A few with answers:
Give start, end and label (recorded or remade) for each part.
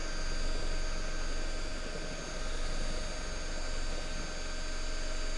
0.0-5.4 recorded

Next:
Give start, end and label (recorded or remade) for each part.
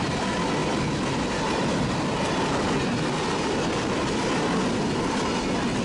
0.0-5.8 recorded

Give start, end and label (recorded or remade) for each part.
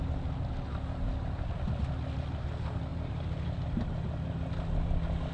0.0-2.9 recorded; 2.9-3.6 remade; 3.6-5.3 recorded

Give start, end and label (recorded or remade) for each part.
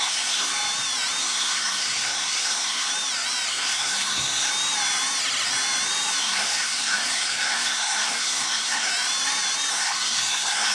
0.0-0.5 remade; 0.5-1.2 recorded; 1.2-2.9 remade; 2.9-3.5 recorded; 3.5-4.5 remade; 4.5-6.2 recorded; 6.2-8.9 remade; 8.9-9.7 recorded; 9.7-10.7 remade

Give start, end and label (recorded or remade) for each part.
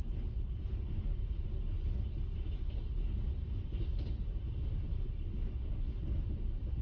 0.0-4.9 remade; 4.9-6.2 recorded; 6.2-6.8 remade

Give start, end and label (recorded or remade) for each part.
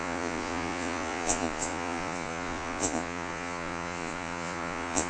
0.0-5.1 remade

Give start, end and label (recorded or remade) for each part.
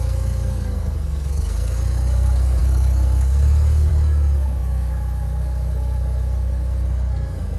0.0-7.6 remade